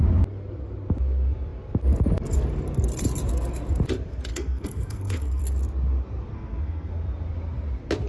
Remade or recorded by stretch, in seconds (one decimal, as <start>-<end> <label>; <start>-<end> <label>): 0.0-4.3 recorded; 4.3-5.4 remade; 5.4-6.3 recorded; 6.3-6.9 remade; 6.9-8.1 recorded